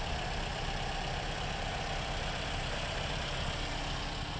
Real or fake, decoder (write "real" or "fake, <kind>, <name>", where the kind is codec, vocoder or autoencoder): real